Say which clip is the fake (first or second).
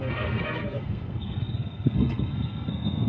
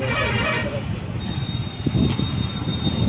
first